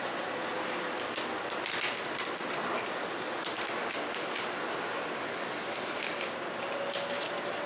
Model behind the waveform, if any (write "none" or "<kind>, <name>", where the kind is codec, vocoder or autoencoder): none